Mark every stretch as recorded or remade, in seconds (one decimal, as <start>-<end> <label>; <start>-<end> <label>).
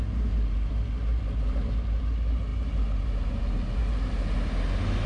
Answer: 0.0-5.1 recorded